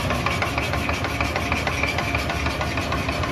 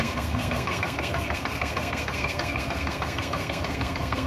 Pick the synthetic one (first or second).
second